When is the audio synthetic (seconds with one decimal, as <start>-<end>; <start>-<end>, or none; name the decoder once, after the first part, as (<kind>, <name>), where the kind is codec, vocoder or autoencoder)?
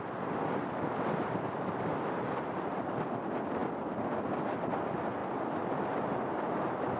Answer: none